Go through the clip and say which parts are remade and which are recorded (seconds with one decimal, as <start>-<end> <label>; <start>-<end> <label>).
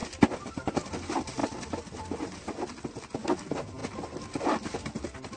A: 0.0-5.4 recorded